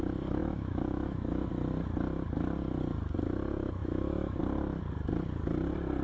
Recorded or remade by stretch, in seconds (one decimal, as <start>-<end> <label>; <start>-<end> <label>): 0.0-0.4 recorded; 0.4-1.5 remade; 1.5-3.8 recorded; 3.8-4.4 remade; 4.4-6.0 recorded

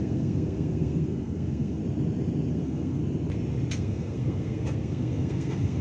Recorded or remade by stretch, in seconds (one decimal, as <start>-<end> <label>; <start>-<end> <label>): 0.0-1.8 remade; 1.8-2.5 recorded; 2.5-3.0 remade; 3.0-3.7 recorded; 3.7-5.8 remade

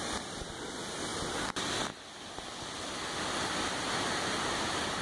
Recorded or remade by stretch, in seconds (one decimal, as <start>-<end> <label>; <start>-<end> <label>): 0.0-5.0 recorded